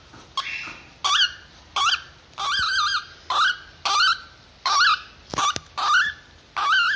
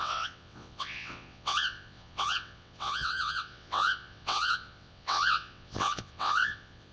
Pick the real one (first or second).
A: first